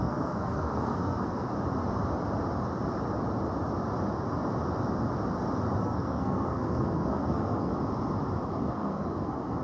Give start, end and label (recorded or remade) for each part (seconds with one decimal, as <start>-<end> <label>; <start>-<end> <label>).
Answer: 0.0-1.5 remade; 1.5-5.8 recorded; 5.8-7.7 remade; 7.7-8.5 recorded; 8.5-9.6 remade